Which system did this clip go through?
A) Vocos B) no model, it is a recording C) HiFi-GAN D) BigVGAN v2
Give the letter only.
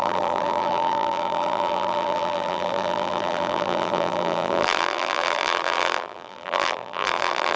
D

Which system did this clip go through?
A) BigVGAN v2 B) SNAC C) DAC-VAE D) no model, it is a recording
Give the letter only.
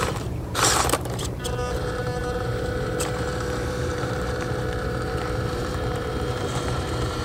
A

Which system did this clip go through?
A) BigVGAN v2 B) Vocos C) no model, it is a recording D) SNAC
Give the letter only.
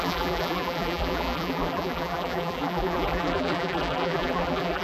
A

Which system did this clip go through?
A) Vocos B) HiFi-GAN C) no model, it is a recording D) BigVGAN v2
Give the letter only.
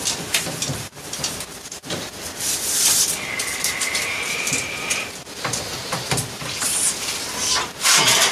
D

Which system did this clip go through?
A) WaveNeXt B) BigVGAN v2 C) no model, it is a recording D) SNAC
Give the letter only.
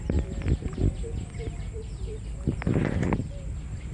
C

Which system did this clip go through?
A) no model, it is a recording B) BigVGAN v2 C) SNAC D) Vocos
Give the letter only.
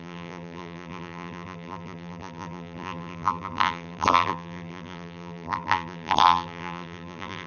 B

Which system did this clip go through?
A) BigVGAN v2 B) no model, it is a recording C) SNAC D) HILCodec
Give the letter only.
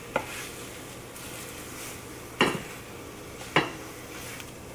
B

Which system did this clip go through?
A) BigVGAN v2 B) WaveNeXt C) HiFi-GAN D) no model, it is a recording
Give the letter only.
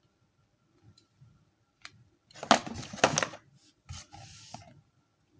D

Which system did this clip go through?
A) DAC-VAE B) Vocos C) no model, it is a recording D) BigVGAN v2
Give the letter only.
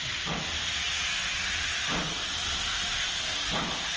C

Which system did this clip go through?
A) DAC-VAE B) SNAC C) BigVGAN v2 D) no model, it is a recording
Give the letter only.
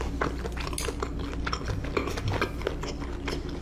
D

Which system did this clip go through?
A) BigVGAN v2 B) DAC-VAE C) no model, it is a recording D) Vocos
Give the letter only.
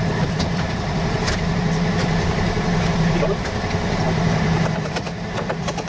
A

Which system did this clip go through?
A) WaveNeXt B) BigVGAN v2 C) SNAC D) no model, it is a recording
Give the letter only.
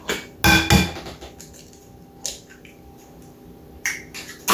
D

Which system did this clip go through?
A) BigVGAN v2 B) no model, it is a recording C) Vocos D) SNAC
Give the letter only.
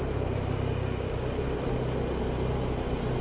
B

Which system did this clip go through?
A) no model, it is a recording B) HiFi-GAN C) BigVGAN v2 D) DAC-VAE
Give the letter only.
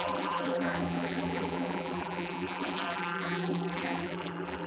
C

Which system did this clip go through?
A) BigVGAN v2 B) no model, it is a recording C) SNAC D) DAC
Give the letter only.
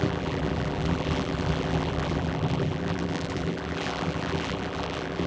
A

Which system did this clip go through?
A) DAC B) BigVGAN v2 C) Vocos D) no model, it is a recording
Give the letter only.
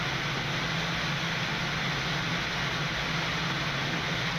D